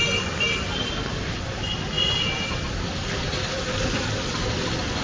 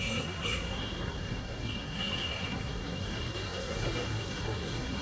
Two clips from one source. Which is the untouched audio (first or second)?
first